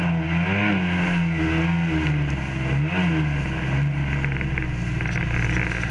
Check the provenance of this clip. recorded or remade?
recorded